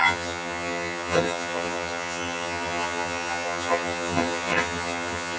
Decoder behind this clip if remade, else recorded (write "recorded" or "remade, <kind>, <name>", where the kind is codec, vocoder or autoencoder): remade, vocoder, HiFi-GAN